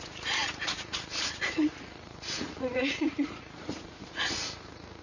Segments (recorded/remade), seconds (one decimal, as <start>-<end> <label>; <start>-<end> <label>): 0.0-5.0 remade